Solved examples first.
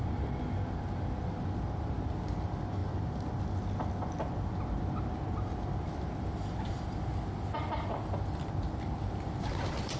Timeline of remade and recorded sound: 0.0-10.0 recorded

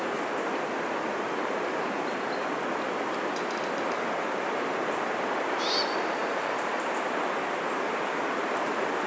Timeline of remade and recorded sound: 0.0-9.1 recorded

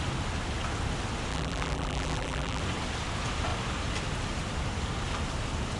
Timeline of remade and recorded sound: 0.0-1.3 recorded; 1.3-2.6 remade; 2.6-5.8 recorded

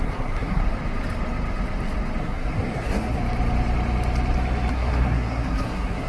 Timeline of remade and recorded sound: 0.0-0.6 remade; 0.6-2.2 recorded; 2.2-3.2 remade; 3.2-4.7 recorded; 4.7-6.1 remade

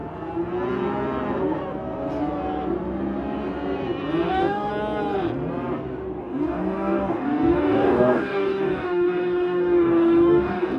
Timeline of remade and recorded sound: 0.0-4.3 recorded; 4.3-4.7 remade; 4.7-6.2 recorded; 6.2-10.8 remade

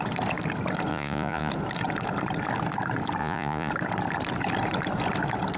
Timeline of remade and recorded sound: 0.0-0.9 recorded; 0.9-1.5 remade; 1.5-3.2 recorded; 3.2-3.7 remade; 3.7-5.6 recorded

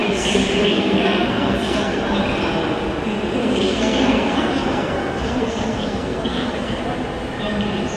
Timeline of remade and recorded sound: 0.0-2.0 remade; 2.0-3.4 recorded; 3.4-6.8 remade; 6.8-8.0 recorded

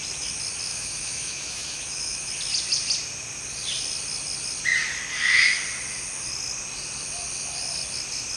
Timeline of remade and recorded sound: 0.0-0.7 recorded; 0.7-2.3 remade; 2.3-8.4 recorded